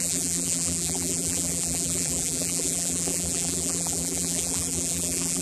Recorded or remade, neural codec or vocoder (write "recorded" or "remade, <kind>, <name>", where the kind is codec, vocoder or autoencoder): remade, vocoder, BigVGAN v2